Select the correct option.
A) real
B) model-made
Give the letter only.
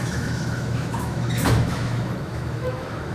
B